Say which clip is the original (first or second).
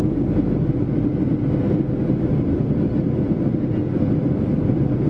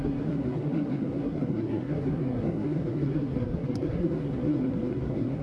first